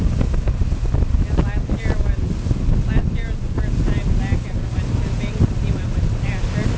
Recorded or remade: recorded